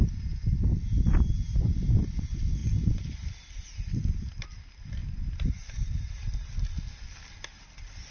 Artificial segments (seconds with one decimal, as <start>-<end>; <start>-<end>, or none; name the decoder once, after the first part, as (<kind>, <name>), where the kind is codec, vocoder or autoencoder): 0.0-5.0 (vocoder, BigVGAN v2); 7.2-8.1